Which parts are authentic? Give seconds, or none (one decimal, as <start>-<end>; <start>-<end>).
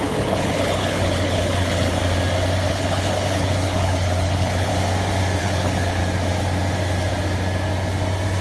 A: 2.0-2.7; 4.7-5.4; 6.0-8.4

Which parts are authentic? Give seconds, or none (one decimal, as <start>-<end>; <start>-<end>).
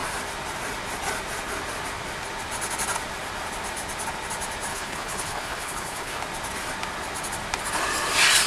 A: 0.0-4.7; 6.2-8.5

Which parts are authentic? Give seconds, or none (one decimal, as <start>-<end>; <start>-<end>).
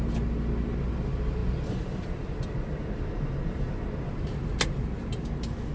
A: 0.0-5.7